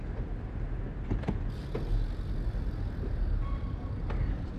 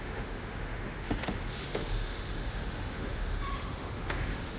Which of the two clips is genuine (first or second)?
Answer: first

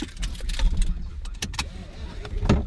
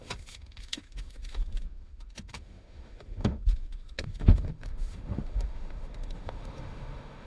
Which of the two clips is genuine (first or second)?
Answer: first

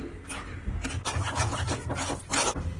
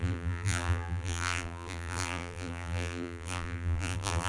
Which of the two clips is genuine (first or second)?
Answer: first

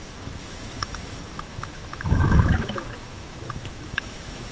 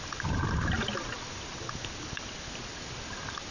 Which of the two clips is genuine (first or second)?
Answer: second